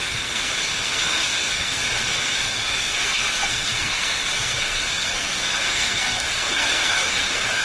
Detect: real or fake fake